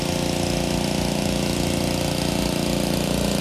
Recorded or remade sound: recorded